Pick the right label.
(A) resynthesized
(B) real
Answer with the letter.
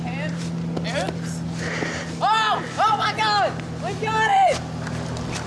B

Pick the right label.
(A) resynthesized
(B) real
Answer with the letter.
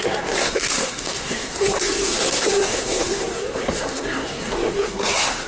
A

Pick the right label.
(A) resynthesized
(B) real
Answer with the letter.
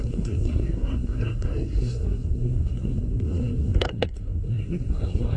A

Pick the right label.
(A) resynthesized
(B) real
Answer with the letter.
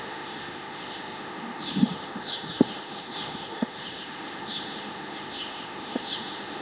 A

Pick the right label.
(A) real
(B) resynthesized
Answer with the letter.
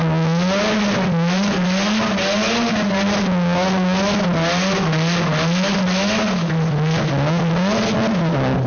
A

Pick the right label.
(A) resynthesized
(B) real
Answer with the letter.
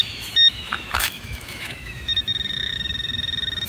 A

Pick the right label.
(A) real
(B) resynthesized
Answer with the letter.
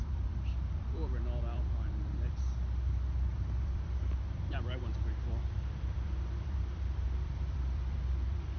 B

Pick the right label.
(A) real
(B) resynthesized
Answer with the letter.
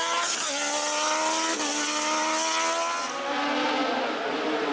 A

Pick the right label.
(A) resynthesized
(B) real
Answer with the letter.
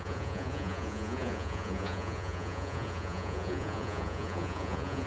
A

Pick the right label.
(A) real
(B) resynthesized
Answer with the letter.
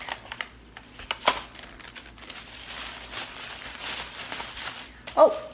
A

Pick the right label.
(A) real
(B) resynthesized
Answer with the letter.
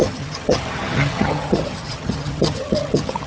B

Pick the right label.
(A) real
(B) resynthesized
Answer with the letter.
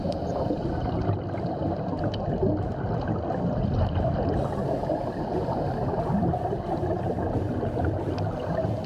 A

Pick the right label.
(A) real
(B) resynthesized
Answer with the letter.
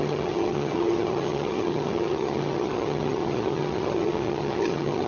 B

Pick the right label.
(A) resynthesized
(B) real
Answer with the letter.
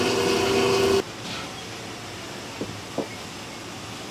B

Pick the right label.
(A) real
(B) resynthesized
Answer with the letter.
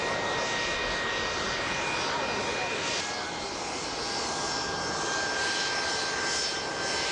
A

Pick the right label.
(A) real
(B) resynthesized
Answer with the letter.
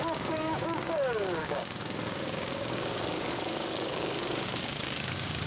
B